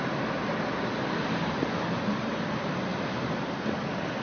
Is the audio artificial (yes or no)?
no